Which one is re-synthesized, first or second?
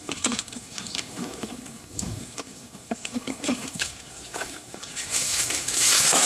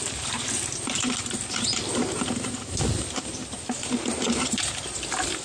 first